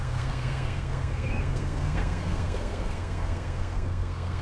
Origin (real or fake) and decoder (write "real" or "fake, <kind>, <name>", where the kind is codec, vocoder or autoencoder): fake, codec, SNAC